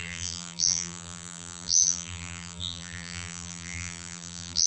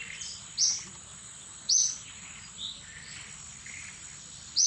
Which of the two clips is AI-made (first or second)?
first